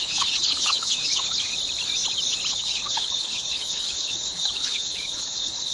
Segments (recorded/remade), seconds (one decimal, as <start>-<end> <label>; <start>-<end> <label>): 0.0-1.5 remade; 1.5-2.5 recorded; 2.5-5.7 remade